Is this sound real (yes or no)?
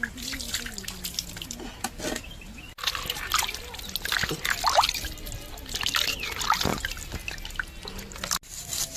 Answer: yes